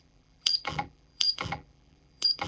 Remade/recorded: remade